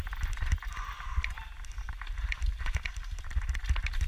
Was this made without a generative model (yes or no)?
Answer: yes